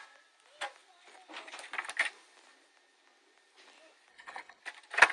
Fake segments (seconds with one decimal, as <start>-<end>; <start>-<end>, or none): 4.1-4.6